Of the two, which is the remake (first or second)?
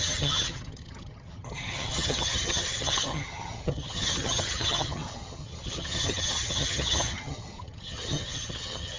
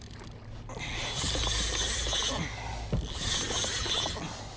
first